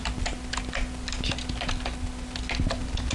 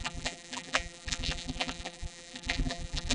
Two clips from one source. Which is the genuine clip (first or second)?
first